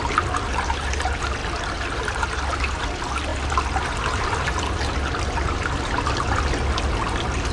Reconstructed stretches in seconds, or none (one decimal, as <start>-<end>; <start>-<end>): none